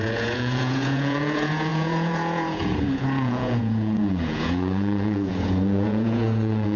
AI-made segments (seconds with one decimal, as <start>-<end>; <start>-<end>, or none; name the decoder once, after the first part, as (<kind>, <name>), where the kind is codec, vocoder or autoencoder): 0.0-6.8 (vocoder, Vocos)